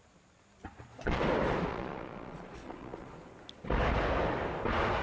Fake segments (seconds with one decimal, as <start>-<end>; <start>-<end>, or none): 0.7-1.2; 1.7-3.3